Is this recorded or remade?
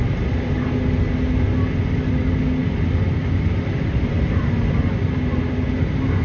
recorded